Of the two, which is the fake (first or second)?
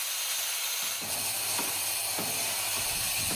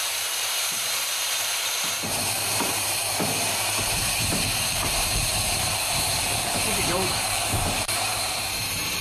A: second